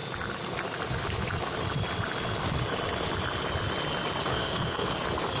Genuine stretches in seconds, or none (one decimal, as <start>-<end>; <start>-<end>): 0.0-4.3; 4.9-5.4